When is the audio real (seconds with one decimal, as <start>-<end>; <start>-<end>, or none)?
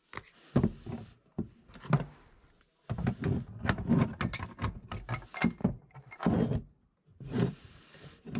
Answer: 0.0-5.6; 6.2-7.1